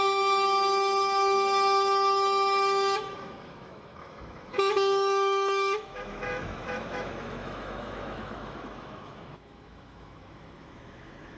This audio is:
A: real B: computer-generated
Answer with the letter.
B